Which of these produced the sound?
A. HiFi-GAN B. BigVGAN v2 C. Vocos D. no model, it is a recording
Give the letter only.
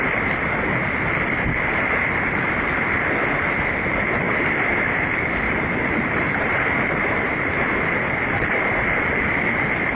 D